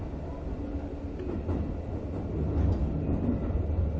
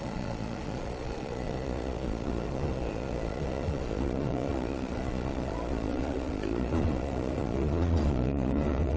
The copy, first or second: second